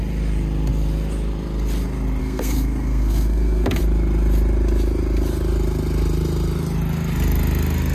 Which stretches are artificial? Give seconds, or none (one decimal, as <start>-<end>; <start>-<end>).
2.2-3.8